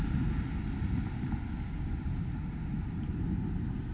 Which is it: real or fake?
real